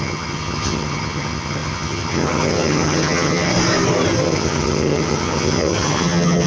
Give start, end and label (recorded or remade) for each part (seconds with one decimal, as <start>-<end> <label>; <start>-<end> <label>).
0.0-3.5 remade; 3.5-4.2 recorded; 4.2-6.5 remade